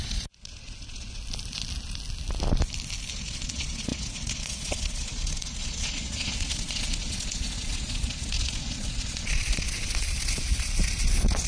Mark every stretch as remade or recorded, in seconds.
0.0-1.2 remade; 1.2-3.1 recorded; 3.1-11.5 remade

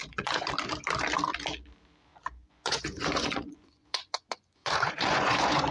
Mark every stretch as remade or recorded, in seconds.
0.0-0.5 remade; 0.5-2.1 recorded; 2.1-5.7 remade

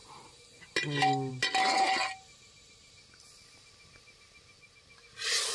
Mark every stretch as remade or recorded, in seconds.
0.0-5.5 recorded

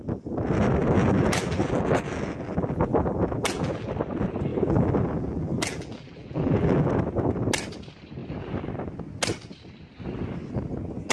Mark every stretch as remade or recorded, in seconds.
0.0-0.8 recorded; 0.8-3.9 remade; 3.9-4.5 recorded; 4.5-6.9 remade; 6.9-11.1 recorded

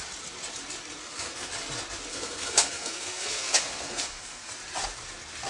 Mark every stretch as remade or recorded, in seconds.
0.0-1.0 recorded; 1.0-1.5 remade; 1.5-2.1 recorded; 2.1-4.5 remade; 4.5-5.5 recorded